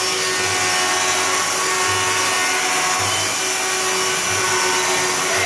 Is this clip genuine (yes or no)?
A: yes